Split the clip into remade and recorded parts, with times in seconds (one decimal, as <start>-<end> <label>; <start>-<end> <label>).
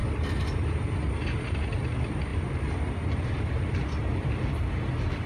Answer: 0.0-5.3 recorded